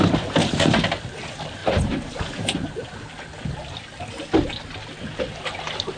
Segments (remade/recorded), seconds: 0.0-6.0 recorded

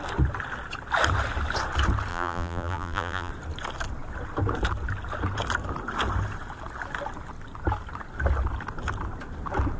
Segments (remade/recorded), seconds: 0.0-2.1 recorded; 2.1-3.3 remade; 3.3-9.8 recorded

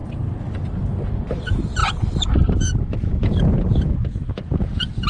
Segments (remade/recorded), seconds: 0.0-5.1 recorded

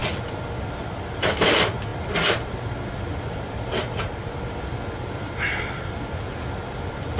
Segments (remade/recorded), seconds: 0.0-7.2 recorded